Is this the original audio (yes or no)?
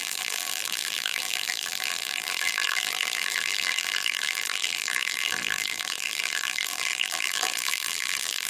no